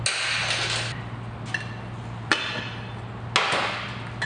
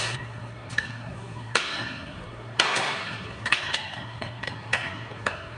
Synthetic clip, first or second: second